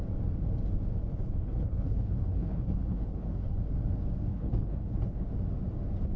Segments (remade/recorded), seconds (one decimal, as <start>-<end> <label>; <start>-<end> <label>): 0.0-1.0 recorded; 1.0-3.6 remade; 3.6-4.3 recorded; 4.3-5.3 remade; 5.3-6.2 recorded